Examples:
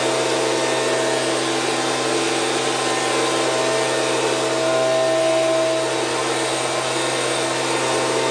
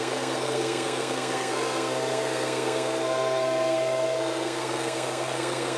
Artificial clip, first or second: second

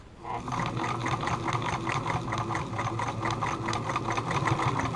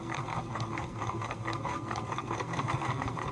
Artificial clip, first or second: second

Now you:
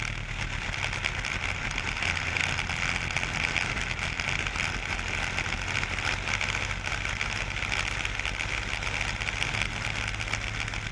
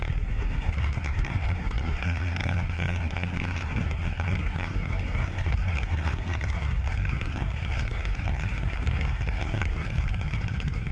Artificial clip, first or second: second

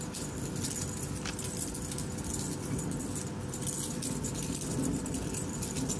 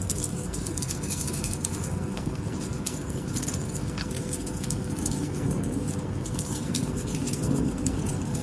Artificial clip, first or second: second